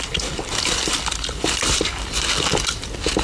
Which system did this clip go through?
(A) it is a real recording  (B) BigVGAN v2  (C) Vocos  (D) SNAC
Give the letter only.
A